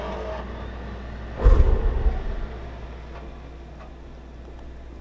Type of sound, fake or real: real